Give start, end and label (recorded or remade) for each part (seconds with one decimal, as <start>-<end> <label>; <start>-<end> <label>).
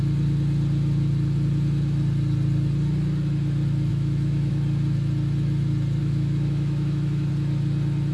0.0-3.9 recorded; 3.9-4.5 remade; 4.5-6.0 recorded; 6.0-7.3 remade; 7.3-8.1 recorded